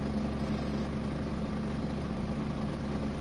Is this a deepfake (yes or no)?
no